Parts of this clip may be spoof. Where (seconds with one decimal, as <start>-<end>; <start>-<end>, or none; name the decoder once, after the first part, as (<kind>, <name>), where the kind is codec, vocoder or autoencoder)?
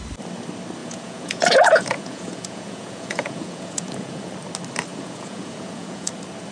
0.8-4.3 (vocoder, Vocos); 4.9-6.1